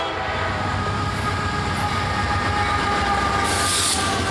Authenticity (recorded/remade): recorded